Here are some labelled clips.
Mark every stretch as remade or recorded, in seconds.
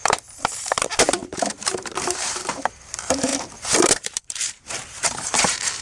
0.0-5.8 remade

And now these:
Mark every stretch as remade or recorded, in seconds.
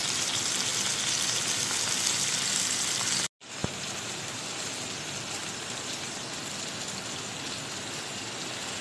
0.0-3.6 recorded; 3.6-4.7 remade; 4.7-5.4 recorded; 5.4-6.3 remade; 6.3-8.8 recorded